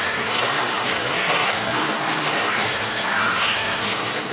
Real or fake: fake